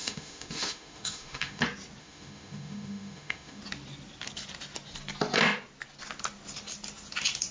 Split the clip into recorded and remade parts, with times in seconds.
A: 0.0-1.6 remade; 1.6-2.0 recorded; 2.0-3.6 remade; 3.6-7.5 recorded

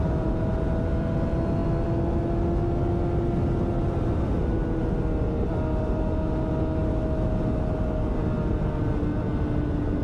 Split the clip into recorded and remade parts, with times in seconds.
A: 0.0-10.0 recorded

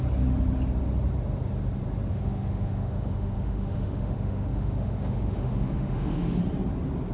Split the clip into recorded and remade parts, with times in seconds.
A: 0.0-2.1 recorded; 2.1-6.4 remade; 6.4-7.1 recorded

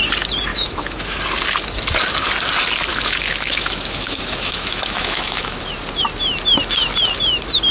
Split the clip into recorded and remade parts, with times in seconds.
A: 0.0-0.5 recorded; 0.5-1.2 remade; 1.2-2.9 recorded; 2.9-5.6 remade; 5.6-7.7 recorded